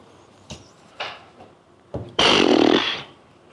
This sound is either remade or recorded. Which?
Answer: remade